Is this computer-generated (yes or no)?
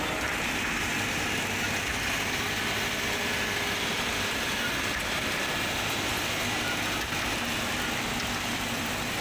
no